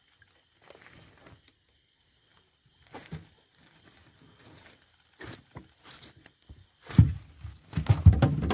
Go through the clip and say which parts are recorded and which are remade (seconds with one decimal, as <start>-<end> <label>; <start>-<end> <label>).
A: 0.0-8.5 recorded